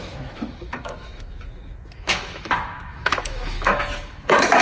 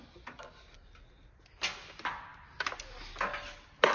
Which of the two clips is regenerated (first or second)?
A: first